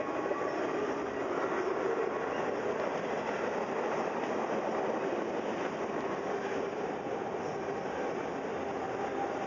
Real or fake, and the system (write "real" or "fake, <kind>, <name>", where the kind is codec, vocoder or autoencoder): real